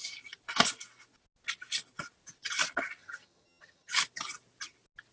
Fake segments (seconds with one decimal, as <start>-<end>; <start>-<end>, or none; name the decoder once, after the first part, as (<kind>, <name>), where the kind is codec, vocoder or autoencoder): 3.0-3.9 (vocoder, HiFi-GAN)